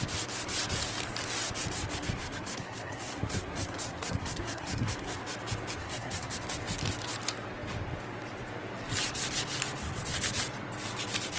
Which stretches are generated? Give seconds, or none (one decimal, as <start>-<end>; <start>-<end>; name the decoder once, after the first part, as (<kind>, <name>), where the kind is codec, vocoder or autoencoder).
1.9-5.2 (codec, SNAC); 5.8-6.4